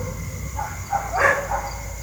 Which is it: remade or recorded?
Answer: recorded